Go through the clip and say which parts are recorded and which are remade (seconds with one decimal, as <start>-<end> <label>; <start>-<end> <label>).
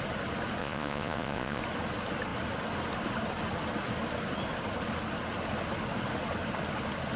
0.0-0.6 recorded; 0.6-1.6 remade; 1.6-7.2 recorded